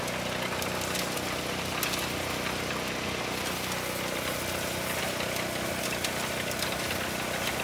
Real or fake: real